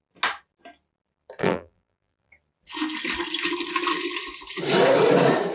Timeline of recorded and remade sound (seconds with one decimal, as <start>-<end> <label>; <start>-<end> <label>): 0.0-1.4 recorded; 1.4-2.3 remade; 2.3-5.5 recorded